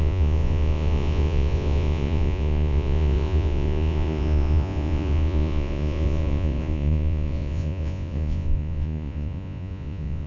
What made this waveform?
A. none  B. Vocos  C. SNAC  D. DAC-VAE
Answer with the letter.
B